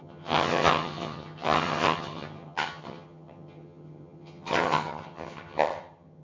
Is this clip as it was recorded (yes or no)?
no